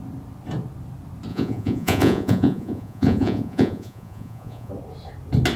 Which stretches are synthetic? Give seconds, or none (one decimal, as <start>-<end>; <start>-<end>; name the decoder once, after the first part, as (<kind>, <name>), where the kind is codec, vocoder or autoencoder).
1.3-4.7 (vocoder, Vocos)